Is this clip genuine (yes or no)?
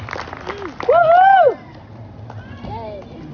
yes